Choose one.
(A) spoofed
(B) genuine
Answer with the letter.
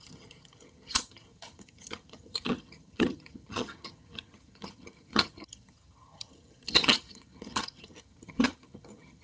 A